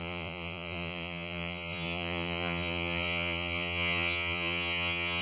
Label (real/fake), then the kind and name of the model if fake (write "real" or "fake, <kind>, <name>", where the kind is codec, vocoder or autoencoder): fake, vocoder, Vocos